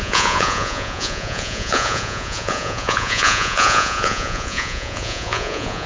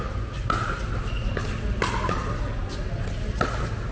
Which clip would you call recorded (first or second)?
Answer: second